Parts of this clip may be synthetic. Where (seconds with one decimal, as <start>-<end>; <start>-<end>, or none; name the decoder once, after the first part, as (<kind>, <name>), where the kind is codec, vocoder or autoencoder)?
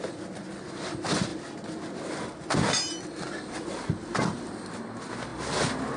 none